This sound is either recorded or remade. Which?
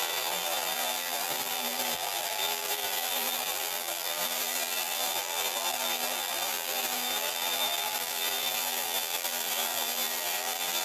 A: remade